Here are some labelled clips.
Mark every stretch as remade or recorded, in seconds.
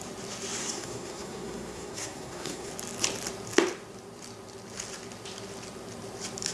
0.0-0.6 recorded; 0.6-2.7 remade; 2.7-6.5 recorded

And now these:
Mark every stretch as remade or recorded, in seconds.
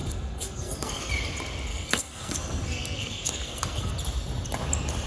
0.0-1.1 remade; 1.1-1.7 recorded; 1.7-3.9 remade; 3.9-5.1 recorded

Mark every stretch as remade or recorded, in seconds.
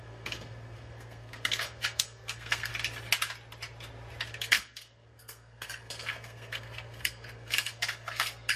0.0-2.7 remade; 2.7-4.3 recorded; 4.3-8.6 remade